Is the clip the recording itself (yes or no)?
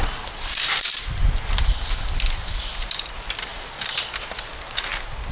yes